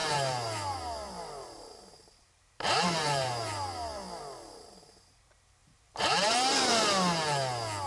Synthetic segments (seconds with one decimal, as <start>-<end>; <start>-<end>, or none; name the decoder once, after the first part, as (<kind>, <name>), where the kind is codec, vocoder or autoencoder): 0.0-4.2 (vocoder, BigVGAN v2); 5.6-6.7